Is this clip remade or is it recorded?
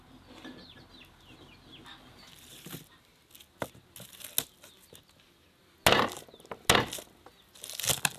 recorded